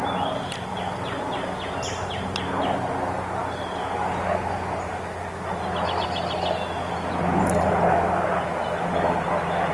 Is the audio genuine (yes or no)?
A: yes